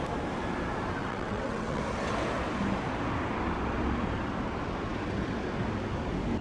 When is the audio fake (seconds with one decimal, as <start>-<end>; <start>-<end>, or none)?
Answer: 1.0-1.8